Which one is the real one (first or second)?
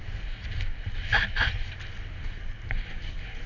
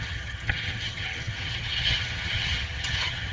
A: first